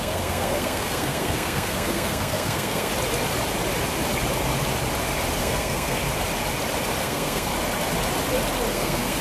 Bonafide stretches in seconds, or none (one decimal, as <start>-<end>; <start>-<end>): 2.9-5.4; 6.0-7.0; 7.5-8.7